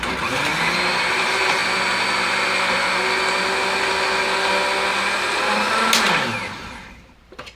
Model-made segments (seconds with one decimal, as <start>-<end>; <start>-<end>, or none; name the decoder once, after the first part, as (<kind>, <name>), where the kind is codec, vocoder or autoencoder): 0.0-0.5 (vocoder, BigVGAN v2); 1.1-1.6; 6.2-7.6